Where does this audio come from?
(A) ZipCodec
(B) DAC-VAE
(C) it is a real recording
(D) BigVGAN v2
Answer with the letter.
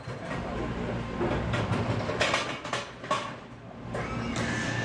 C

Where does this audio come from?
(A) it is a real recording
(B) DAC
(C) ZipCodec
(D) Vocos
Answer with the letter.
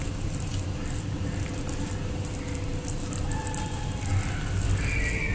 A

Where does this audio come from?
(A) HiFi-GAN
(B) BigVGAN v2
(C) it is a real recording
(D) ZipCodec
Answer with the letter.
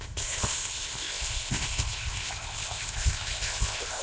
D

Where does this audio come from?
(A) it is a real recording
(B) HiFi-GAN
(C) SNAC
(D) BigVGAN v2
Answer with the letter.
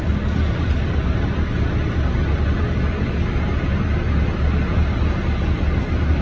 A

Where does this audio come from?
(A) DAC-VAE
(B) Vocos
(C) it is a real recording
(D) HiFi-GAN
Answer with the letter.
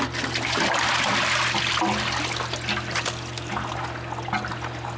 C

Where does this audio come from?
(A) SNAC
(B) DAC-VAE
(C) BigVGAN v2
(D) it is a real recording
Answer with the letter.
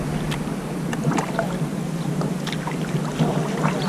D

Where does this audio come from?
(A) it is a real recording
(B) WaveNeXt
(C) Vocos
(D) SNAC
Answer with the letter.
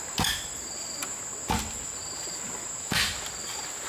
A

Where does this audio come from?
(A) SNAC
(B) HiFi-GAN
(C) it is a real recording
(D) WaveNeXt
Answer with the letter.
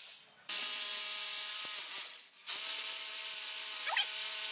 C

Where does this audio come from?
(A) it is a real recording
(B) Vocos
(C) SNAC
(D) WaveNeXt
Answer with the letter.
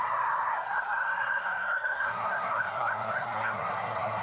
C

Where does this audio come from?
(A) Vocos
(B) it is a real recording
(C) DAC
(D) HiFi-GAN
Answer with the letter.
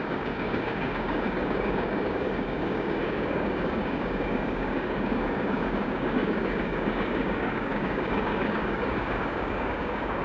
C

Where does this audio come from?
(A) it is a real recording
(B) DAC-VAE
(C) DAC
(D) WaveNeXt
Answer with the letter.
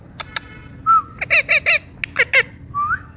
A